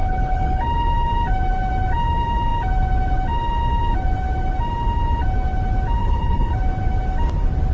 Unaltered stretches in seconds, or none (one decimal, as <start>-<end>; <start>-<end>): 0.6-6.0; 6.5-7.7